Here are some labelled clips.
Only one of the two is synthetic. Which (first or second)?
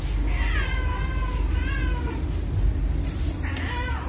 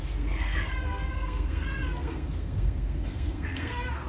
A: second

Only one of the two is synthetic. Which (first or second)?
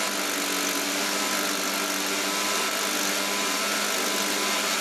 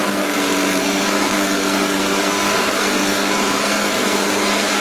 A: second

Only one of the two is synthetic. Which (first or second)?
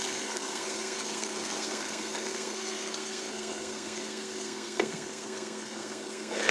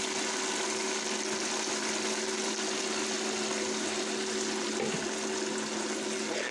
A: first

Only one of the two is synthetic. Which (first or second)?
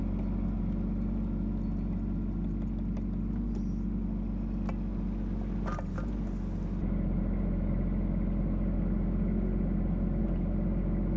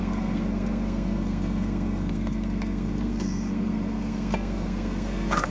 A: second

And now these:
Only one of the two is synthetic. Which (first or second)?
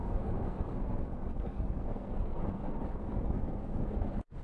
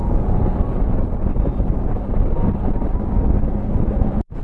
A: first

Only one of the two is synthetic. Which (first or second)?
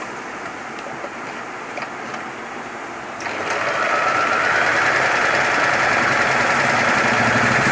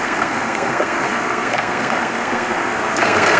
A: second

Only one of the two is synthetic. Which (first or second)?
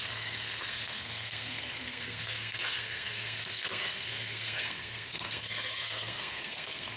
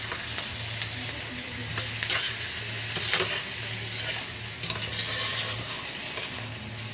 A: first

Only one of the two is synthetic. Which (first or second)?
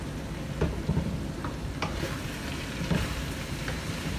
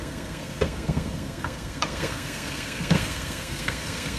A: second